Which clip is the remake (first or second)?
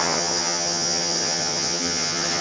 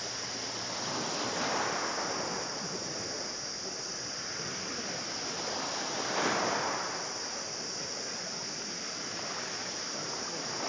first